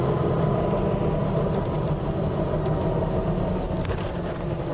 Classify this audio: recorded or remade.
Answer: recorded